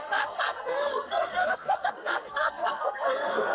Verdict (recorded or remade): remade